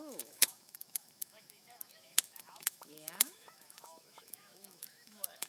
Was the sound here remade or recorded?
remade